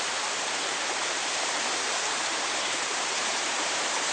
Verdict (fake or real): fake